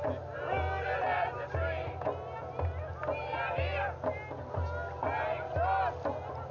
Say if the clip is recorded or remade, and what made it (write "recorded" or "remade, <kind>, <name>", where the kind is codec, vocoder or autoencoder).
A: recorded